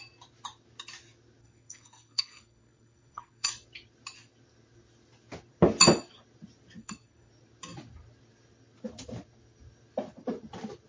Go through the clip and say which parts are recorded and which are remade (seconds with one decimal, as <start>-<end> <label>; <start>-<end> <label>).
0.0-1.4 recorded; 1.4-3.5 remade; 3.5-6.8 recorded; 6.8-7.3 remade; 7.3-10.9 recorded